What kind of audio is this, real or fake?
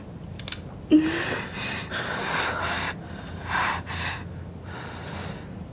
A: real